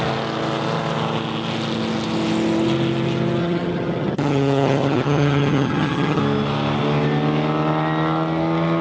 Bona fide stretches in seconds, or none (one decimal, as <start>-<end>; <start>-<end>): 0.0-3.4; 6.2-8.8